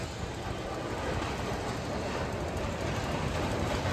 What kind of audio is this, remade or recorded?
recorded